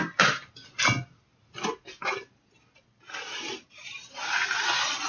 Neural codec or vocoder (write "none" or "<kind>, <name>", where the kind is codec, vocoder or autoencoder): none